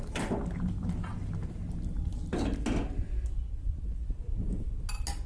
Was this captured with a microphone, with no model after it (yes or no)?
yes